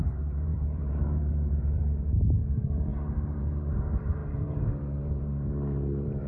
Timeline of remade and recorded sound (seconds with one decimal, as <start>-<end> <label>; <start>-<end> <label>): 0.0-6.3 remade